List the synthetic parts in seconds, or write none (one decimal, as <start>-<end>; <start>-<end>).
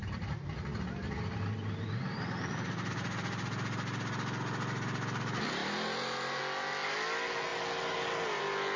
0.0-2.9; 5.6-6.4